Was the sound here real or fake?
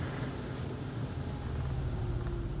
real